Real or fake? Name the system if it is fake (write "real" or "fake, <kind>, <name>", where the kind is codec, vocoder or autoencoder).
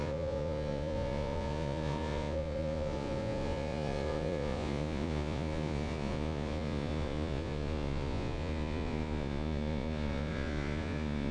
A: fake, vocoder, Vocos